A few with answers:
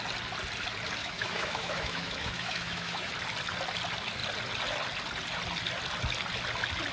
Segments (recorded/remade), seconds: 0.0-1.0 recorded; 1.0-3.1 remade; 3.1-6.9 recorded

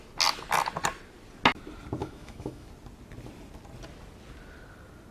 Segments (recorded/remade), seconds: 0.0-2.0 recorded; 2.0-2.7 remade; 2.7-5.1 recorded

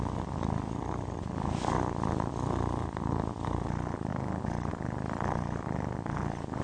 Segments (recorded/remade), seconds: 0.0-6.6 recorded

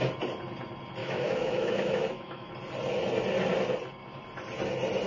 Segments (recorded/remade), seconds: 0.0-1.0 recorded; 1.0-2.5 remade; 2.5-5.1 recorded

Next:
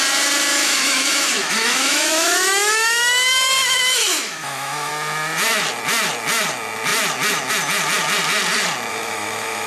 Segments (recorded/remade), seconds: 0.0-0.5 recorded; 0.5-4.9 remade; 4.9-8.9 recorded; 8.9-9.7 remade

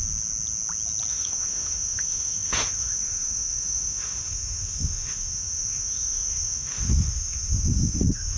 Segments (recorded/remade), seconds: 0.0-1.1 recorded; 1.1-8.4 remade

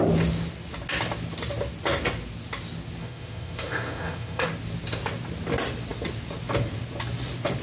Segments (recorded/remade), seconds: 0.0-3.0 recorded; 3.0-4.5 remade; 4.5-7.6 recorded

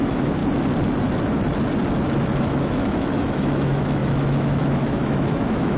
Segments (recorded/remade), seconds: 0.0-0.4 remade; 0.4-2.4 recorded; 2.4-5.8 remade